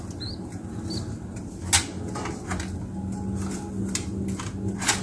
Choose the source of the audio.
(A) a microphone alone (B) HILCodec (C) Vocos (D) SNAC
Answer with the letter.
A